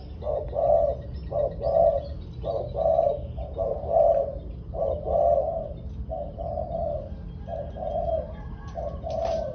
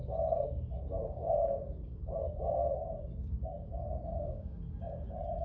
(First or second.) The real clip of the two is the first